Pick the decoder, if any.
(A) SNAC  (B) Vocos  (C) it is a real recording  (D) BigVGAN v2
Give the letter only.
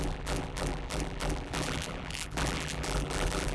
D